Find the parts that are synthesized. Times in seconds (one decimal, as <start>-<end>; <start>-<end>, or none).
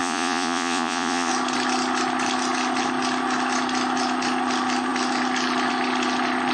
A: 0.0-1.3